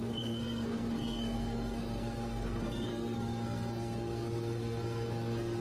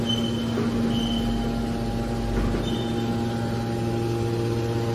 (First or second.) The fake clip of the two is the first